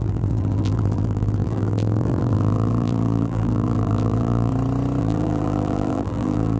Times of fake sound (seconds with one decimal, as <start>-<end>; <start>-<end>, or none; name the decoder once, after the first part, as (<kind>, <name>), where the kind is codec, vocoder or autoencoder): 0.0-4.5 (vocoder, BigVGAN v2); 5.0-6.6